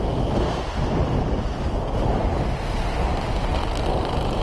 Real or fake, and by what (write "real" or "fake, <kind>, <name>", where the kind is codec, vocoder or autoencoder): real